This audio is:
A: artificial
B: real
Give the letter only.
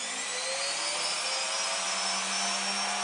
B